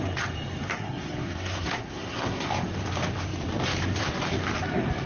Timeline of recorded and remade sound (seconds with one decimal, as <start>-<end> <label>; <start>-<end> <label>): 0.0-0.7 recorded; 0.7-2.5 remade; 2.5-5.1 recorded